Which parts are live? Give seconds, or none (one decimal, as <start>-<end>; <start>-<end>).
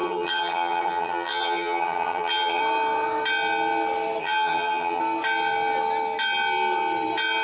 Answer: 2.6-4.2; 5.0-7.4